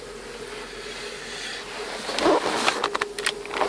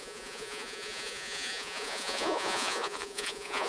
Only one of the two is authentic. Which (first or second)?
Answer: first